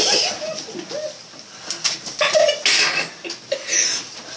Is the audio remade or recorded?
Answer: recorded